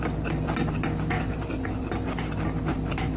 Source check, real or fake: real